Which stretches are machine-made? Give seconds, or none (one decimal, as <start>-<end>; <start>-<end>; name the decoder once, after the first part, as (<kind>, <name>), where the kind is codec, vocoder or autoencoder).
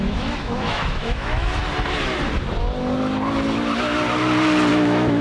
0.0-1.6 (autoencoder, DAC-VAE); 4.7-5.2